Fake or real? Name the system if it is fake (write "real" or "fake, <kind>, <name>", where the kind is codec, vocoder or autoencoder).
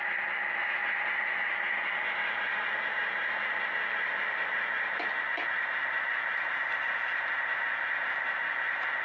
real